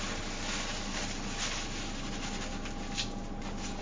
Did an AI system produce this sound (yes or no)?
no